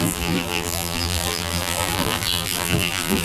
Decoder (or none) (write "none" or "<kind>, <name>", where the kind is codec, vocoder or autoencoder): vocoder, BigVGAN v2